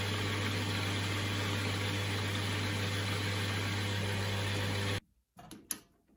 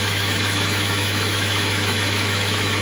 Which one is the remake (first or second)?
second